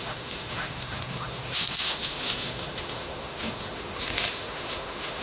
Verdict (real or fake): fake